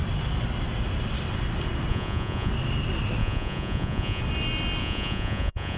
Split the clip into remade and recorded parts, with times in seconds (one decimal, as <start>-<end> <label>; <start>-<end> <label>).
0.0-1.9 recorded; 1.9-2.5 remade; 2.5-3.2 recorded; 3.2-4.2 remade; 4.2-4.8 recorded; 4.8-5.8 remade

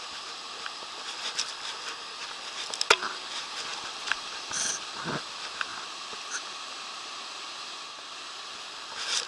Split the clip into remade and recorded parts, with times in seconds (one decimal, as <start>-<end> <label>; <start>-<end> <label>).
0.0-9.3 remade

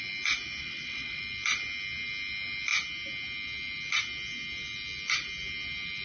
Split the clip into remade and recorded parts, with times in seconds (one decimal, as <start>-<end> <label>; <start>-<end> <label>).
0.0-0.6 recorded; 0.6-1.2 remade; 1.2-6.0 recorded

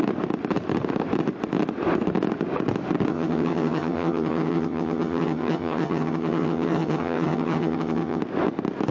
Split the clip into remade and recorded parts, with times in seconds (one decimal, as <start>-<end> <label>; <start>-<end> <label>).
0.0-3.1 recorded; 3.1-8.2 remade; 8.2-8.9 recorded

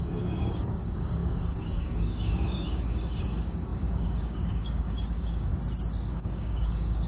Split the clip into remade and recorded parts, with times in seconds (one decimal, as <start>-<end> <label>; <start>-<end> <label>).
0.0-5.5 remade; 5.5-6.1 recorded; 6.1-7.1 remade

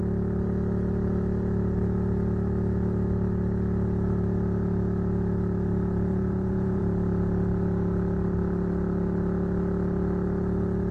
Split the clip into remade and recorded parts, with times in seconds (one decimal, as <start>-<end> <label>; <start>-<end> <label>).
0.0-6.1 recorded; 6.1-6.8 remade; 6.8-10.9 recorded

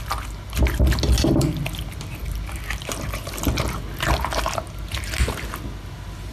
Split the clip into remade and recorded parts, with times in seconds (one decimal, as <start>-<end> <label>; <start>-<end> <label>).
0.0-6.3 recorded

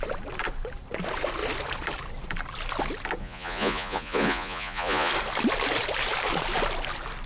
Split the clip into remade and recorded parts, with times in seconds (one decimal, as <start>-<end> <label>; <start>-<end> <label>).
0.0-3.2 recorded; 3.2-5.1 remade; 5.1-7.3 recorded